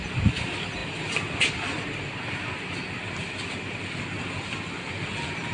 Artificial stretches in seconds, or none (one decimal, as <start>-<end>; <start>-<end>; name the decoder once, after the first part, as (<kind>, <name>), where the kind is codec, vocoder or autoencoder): none

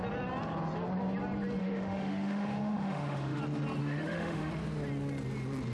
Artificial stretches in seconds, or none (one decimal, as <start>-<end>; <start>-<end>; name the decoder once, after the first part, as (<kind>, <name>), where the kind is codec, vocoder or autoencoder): 1.6-3.4 (autoencoder, DAC-VAE); 3.8-4.5

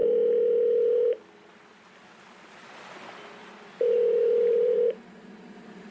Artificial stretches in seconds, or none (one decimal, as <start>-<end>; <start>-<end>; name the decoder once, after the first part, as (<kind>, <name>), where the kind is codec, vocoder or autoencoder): 0.0-1.5 (vocoder, BigVGAN v2); 3.4-5.0

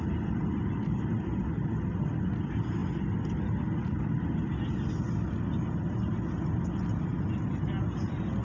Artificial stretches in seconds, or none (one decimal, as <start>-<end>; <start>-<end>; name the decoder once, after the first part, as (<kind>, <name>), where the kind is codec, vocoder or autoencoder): none